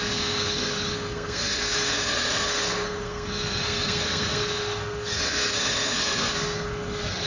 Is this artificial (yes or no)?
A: yes